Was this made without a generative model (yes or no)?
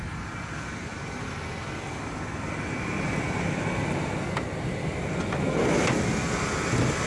yes